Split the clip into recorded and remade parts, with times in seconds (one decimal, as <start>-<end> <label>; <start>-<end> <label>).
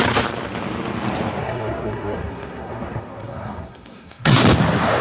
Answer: 0.0-1.4 recorded; 1.4-4.4 remade; 4.4-5.0 recorded